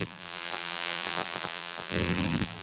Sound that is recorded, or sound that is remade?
remade